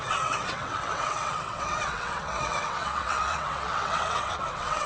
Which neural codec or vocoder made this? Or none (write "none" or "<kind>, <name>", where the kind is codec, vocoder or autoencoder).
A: vocoder, WaveNeXt